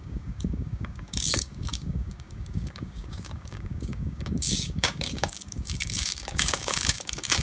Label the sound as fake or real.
fake